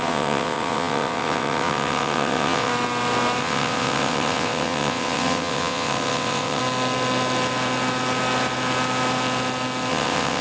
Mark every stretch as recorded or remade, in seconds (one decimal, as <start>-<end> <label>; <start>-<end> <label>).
0.0-2.7 remade; 2.7-3.4 recorded; 3.4-6.6 remade; 6.6-9.9 recorded; 9.9-10.4 remade